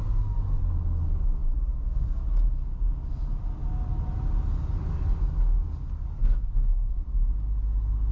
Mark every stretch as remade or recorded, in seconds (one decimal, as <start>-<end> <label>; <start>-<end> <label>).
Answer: 0.0-6.2 recorded; 6.2-7.0 remade; 7.0-8.1 recorded